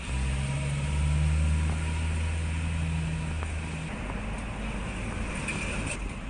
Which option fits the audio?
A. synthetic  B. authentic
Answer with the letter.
B